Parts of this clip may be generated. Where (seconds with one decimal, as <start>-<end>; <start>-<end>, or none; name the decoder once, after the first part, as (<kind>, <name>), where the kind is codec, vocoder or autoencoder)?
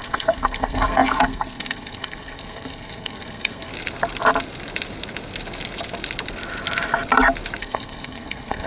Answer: 0.0-3.7 (codec, SNAC); 7.6-8.7